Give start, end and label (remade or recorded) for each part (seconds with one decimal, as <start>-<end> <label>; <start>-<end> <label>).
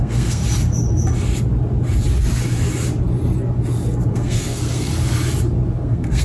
0.0-0.4 remade; 0.4-4.1 recorded; 4.1-4.9 remade; 4.9-5.8 recorded; 5.8-6.2 remade